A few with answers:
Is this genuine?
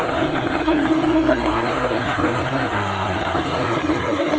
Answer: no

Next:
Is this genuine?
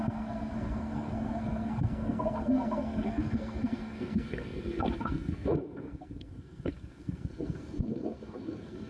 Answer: no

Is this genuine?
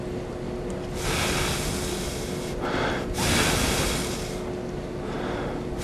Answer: yes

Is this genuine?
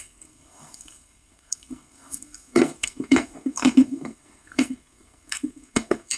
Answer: no